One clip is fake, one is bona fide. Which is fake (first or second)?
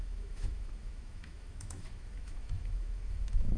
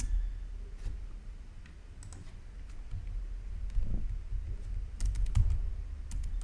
first